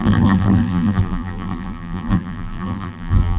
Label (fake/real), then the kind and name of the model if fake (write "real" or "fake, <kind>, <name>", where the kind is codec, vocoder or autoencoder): fake, vocoder, BigVGAN v2